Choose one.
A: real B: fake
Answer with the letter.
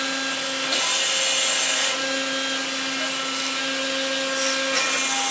A